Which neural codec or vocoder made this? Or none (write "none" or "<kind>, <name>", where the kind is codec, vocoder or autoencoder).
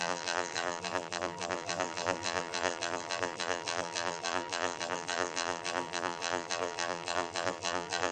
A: vocoder, BigVGAN v2